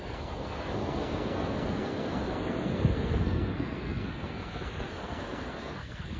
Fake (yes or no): yes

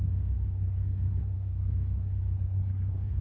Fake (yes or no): yes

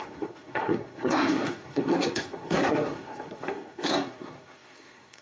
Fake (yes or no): yes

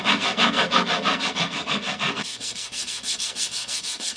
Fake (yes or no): yes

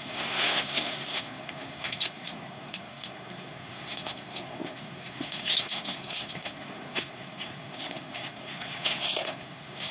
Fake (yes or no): yes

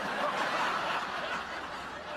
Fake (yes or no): no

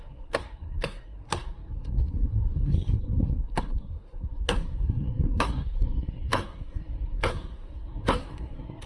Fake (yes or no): yes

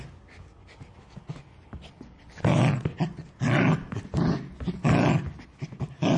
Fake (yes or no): no